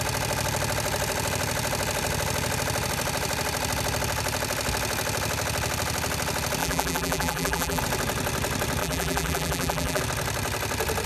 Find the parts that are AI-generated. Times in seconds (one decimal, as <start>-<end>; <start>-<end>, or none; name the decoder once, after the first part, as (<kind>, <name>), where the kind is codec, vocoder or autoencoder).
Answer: 6.6-7.8 (vocoder, BigVGAN v2); 8.8-10.0